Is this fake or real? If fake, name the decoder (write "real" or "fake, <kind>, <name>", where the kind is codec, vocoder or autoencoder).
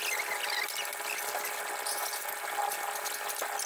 real